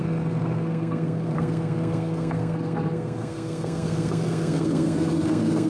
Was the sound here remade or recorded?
remade